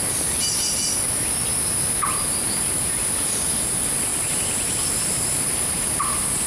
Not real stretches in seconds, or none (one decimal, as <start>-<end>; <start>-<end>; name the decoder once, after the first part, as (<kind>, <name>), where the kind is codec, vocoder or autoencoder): 4.1-6.0 (vocoder, BigVGAN v2)